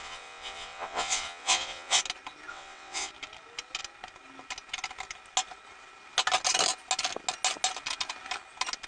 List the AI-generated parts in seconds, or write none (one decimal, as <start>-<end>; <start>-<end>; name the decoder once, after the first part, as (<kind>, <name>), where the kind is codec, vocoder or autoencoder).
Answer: 0.0-2.0 (vocoder, WaveNeXt); 2.5-3.1